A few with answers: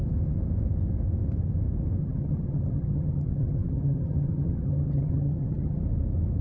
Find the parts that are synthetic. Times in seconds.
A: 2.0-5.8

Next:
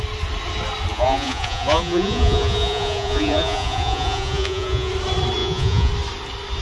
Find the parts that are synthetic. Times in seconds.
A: 0.9-4.9; 5.4-5.9

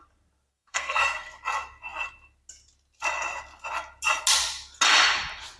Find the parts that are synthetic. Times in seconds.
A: 0.5-1.0